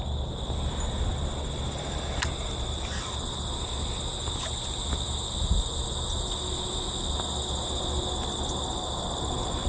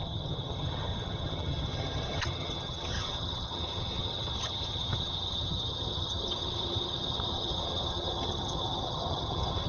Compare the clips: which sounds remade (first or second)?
second